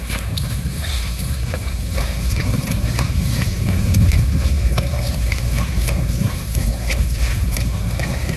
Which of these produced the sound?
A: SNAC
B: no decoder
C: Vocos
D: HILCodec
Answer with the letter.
A